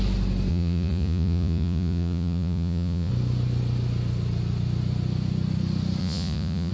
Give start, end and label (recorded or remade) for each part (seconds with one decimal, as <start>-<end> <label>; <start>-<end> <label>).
0.0-0.5 recorded; 0.5-3.1 remade; 3.1-6.0 recorded; 6.0-6.7 remade